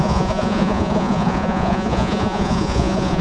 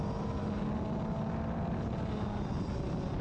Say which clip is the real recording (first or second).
second